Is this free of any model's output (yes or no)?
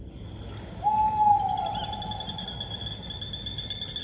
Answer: yes